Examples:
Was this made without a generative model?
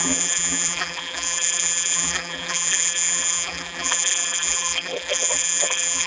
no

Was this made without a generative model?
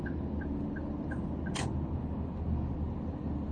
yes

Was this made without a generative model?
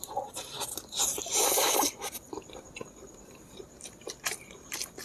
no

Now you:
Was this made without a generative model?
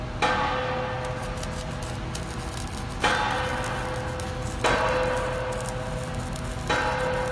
yes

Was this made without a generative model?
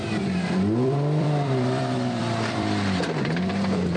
no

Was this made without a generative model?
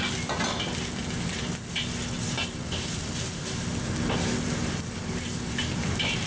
yes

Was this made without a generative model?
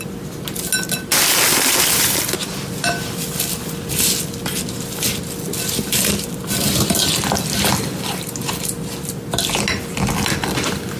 yes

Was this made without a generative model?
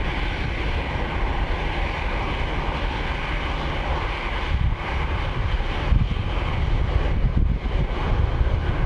yes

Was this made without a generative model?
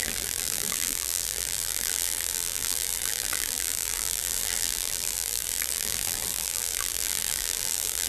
no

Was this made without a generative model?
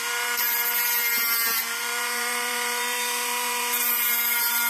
no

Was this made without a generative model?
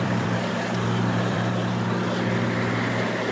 no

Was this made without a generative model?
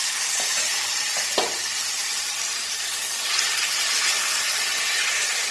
yes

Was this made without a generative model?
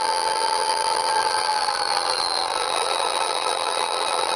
no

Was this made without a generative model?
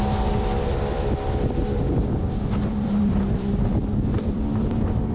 no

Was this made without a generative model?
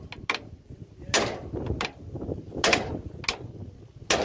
yes